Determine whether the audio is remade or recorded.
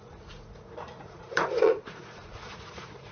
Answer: remade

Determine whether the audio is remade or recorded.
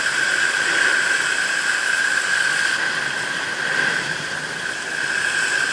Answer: recorded